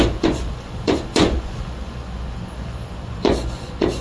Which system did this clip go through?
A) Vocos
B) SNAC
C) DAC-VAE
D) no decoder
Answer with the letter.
A